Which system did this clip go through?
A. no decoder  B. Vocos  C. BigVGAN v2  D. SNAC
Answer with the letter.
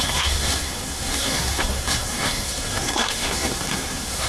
D